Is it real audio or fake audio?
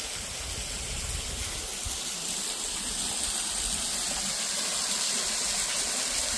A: real